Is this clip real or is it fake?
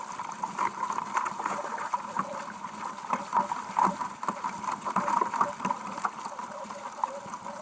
real